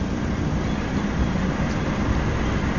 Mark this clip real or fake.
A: real